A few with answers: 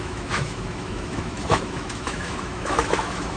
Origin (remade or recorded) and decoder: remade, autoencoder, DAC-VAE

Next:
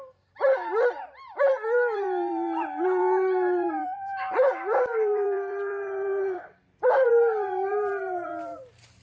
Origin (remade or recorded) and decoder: remade, vocoder, BigVGAN v2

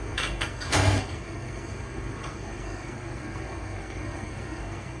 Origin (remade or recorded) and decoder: remade, codec, SNAC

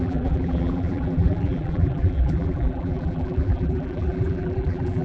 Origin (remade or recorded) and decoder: remade, vocoder, BigVGAN v2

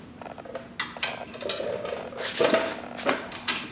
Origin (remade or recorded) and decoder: recorded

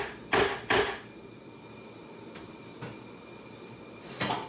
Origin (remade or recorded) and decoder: recorded